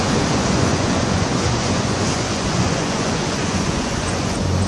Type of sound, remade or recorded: remade